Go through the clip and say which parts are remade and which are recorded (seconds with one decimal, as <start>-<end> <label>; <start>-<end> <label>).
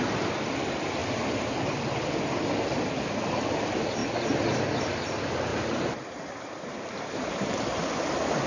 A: 0.0-1.0 recorded; 1.0-1.6 remade; 1.6-5.5 recorded; 5.5-7.8 remade; 7.8-8.5 recorded